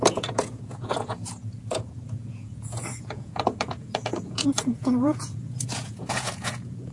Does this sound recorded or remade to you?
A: remade